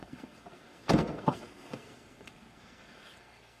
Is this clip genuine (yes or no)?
no